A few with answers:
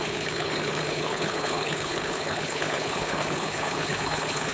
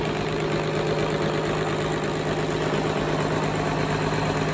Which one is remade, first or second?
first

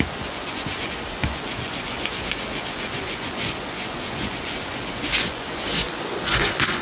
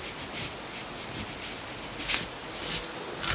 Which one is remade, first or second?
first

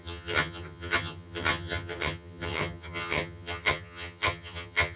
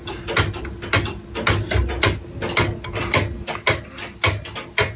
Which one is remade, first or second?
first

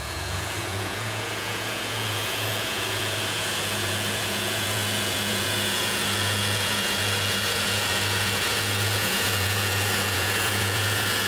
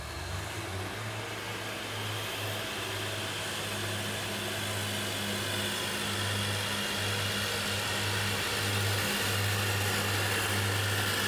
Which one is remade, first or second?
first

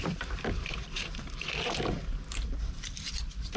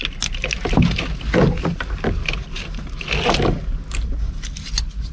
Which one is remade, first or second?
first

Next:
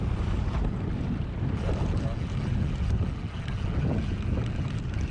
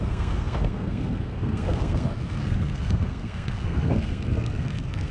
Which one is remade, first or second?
second